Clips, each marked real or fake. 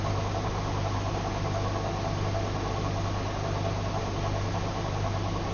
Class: real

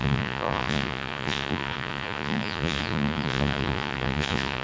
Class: fake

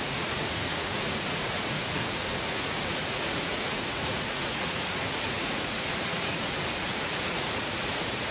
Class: fake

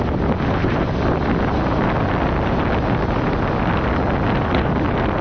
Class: real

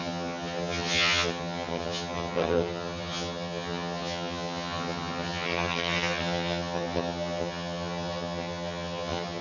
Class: fake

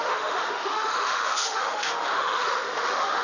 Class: fake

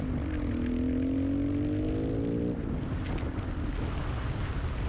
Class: real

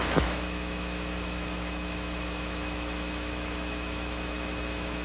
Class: fake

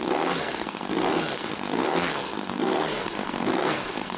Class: fake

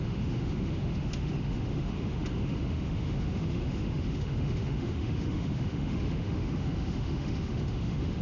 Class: fake